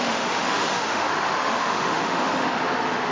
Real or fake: fake